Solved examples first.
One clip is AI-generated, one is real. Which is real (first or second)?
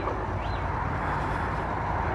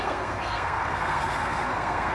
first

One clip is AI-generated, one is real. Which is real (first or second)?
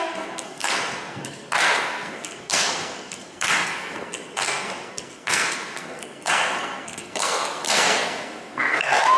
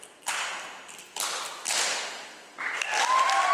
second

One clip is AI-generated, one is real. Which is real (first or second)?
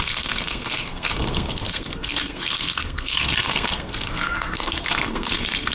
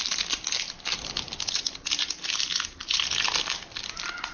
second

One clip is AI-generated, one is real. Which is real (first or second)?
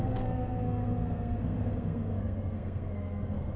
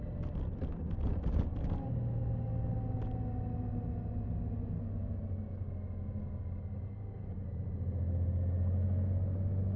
second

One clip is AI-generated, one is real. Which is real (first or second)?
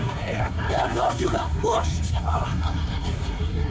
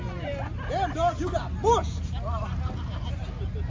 second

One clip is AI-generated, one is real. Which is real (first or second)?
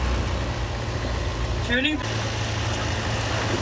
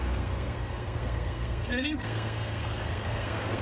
first